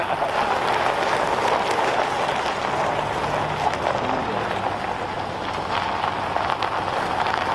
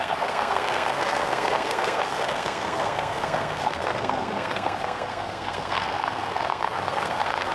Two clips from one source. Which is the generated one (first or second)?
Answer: second